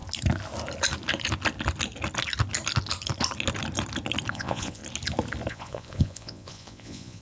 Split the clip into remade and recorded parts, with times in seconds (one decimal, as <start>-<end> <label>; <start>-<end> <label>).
0.0-4.3 recorded; 4.3-4.8 remade; 4.8-5.5 recorded; 5.5-7.2 remade